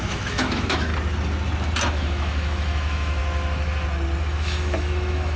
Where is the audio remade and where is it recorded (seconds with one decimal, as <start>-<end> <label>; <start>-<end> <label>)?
0.0-0.9 remade; 0.9-1.9 recorded; 1.9-3.2 remade; 3.2-4.2 recorded; 4.2-5.4 remade